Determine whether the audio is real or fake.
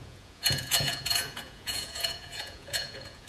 fake